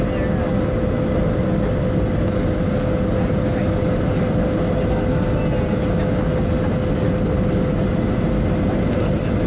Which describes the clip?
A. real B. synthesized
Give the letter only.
A